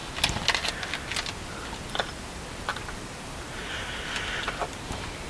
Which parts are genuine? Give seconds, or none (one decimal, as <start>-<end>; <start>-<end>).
0.0-2.7; 4.2-5.3